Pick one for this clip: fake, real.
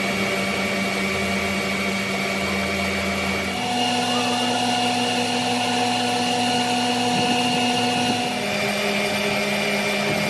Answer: real